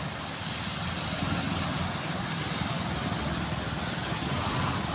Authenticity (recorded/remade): recorded